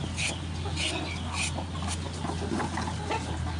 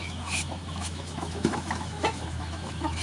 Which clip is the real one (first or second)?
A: first